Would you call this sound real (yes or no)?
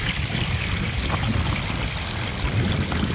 yes